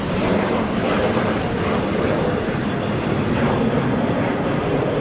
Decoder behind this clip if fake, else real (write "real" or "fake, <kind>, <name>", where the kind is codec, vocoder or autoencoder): fake, vocoder, BigVGAN v2